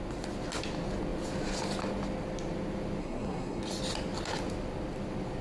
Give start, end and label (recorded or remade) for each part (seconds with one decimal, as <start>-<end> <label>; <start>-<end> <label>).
0.0-3.0 recorded; 3.0-3.6 remade; 3.6-5.4 recorded

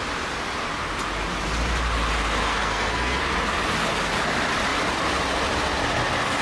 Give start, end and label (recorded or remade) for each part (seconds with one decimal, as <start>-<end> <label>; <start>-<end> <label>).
0.0-2.5 recorded; 2.5-3.2 remade; 3.2-6.4 recorded

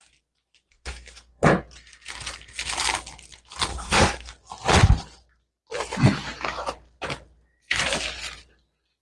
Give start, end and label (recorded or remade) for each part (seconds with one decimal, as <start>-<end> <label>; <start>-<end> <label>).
0.0-0.7 recorded; 0.7-1.5 remade; 1.5-3.7 recorded; 3.7-4.3 remade; 4.3-9.0 recorded